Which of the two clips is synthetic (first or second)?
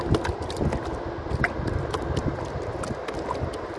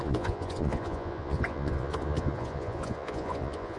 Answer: second